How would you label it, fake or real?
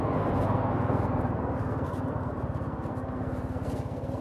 fake